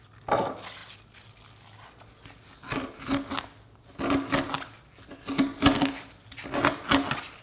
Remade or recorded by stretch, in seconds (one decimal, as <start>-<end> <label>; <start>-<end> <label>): 0.0-7.4 recorded